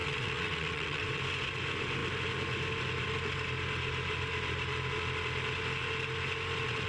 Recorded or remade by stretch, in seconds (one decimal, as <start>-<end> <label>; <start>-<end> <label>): 0.0-1.2 remade; 1.2-6.9 recorded